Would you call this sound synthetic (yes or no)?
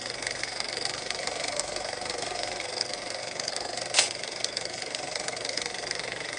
yes